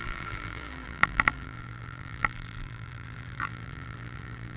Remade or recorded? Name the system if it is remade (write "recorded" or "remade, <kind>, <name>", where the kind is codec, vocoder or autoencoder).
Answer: remade, vocoder, BigVGAN v2